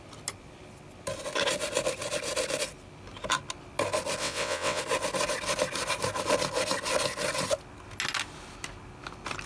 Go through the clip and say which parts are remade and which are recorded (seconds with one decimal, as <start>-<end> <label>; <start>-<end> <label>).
0.0-4.2 recorded; 4.2-4.8 remade; 4.8-9.5 recorded